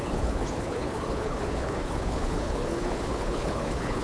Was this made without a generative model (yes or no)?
no